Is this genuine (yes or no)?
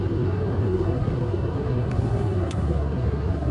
no